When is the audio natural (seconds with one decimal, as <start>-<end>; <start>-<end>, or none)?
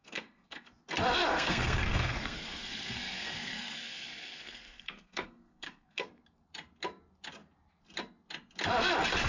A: 0.7-1.3; 6.2-9.3